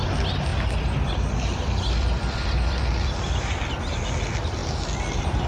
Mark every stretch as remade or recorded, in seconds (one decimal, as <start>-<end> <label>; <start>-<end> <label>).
0.0-0.5 recorded; 0.5-3.8 remade; 3.8-5.5 recorded

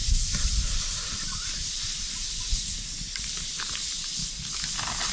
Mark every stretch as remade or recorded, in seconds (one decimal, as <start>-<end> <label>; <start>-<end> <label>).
0.0-4.2 remade; 4.2-5.1 recorded

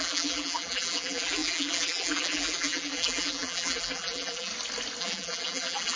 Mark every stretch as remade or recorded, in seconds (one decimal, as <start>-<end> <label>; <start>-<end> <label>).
0.0-4.5 remade; 4.5-5.0 recorded; 5.0-6.0 remade